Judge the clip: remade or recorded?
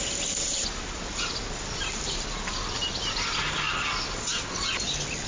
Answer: recorded